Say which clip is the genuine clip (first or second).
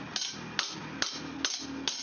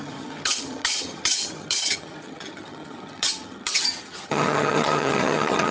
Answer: first